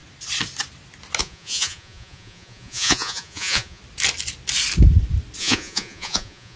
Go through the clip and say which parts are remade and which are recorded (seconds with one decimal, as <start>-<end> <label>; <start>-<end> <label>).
0.0-1.2 recorded; 1.2-3.8 remade; 3.8-5.4 recorded; 5.4-6.6 remade